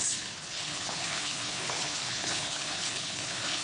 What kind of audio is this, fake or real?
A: fake